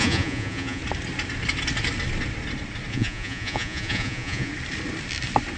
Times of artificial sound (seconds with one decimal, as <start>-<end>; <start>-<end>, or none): 0.0-0.8; 2.9-4.5